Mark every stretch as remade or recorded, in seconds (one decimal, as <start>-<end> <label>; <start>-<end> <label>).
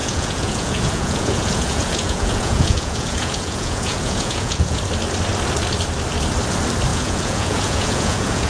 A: 0.0-4.8 remade; 4.8-6.9 recorded; 6.9-8.5 remade